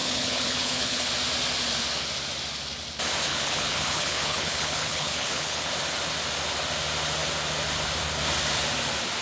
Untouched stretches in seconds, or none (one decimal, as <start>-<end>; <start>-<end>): 1.1-3.3; 5.7-9.2